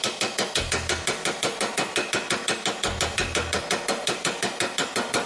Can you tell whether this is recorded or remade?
recorded